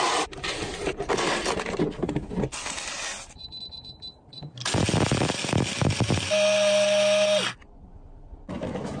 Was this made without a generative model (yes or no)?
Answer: yes